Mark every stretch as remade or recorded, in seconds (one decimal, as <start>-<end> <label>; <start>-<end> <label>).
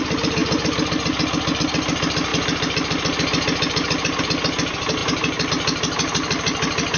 0.0-7.0 recorded